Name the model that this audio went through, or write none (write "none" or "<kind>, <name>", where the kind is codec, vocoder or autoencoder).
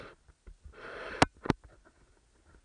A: none